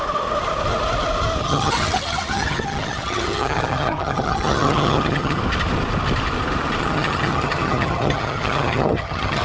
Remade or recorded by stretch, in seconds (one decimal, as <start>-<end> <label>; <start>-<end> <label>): 0.0-1.4 recorded; 1.4-5.4 remade; 5.4-6.8 recorded; 6.8-9.4 remade